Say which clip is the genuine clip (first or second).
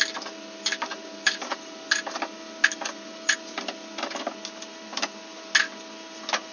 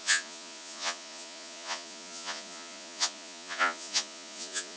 first